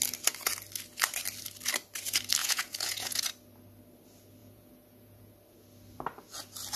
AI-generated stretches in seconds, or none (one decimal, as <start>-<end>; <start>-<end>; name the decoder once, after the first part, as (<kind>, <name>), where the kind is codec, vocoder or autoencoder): 2.4-3.2 (vocoder, Vocos); 4.4-5.3

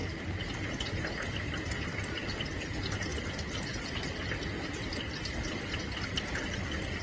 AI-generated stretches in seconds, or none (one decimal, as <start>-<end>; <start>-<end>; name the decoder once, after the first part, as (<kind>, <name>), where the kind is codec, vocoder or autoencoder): none

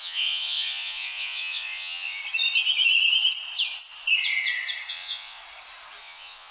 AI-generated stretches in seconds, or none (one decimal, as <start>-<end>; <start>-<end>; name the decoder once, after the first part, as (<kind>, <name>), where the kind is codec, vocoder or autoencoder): 0.0-2.2 (vocoder, Vocos); 4.9-5.4; 6.0-6.5

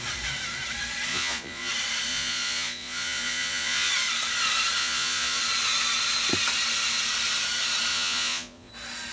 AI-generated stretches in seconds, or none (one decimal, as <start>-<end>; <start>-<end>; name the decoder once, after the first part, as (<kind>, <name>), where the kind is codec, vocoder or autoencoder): 1.1-1.7 (vocoder, Vocos); 2.1-3.9; 4.8-5.4; 7.9-8.7